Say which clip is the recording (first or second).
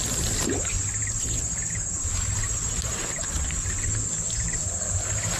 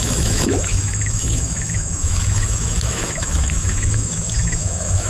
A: first